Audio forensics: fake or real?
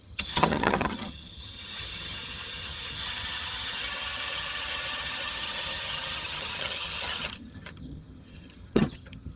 fake